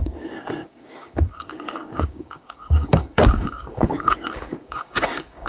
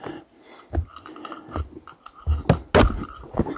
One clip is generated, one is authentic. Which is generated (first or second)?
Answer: first